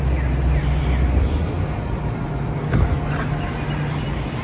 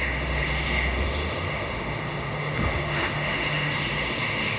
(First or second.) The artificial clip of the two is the second